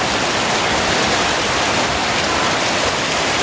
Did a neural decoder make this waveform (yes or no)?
yes